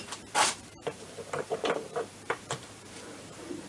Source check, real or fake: fake